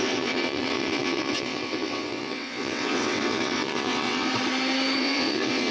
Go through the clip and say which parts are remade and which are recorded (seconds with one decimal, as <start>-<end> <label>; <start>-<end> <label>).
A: 0.0-4.3 remade; 4.3-5.0 recorded; 5.0-5.7 remade